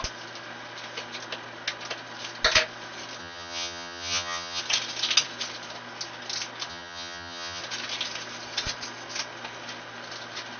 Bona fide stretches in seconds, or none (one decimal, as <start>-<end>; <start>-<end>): 0.0-3.2; 4.6-6.7; 7.6-10.6